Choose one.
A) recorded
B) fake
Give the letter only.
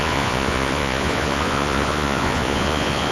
B